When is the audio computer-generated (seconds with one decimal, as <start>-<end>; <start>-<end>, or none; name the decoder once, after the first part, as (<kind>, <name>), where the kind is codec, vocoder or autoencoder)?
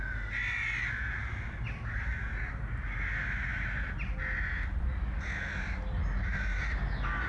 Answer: none